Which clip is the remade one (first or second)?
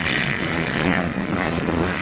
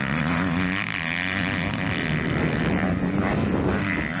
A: first